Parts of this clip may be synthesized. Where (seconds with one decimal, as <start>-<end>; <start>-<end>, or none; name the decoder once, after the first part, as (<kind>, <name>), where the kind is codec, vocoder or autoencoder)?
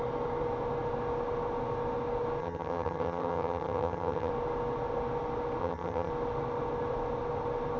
2.4-4.3 (vocoder, HiFi-GAN); 5.6-6.1